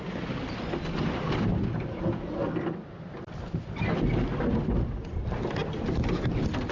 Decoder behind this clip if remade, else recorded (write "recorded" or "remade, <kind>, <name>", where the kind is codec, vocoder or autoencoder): recorded